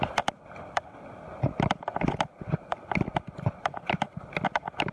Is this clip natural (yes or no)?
yes